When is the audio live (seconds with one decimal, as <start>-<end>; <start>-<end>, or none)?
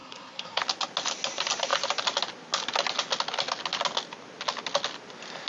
0.6-5.5